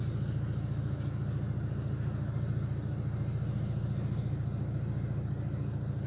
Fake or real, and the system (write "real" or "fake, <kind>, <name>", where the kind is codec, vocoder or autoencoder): real